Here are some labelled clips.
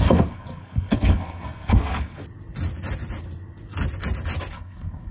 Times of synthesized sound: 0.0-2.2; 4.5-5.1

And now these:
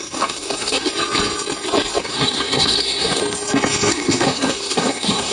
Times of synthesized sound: 0.0-0.9; 2.0-3.2; 3.9-5.3

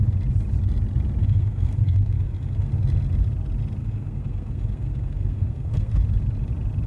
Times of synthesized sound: 1.2-2.7; 3.8-5.9

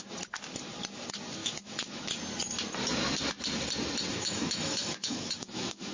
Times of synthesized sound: 1.4-2.0; 4.1-5.9

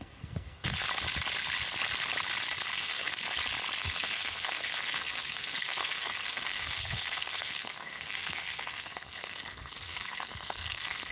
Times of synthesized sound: 0.0-0.7; 2.7-3.1; 3.8-11.1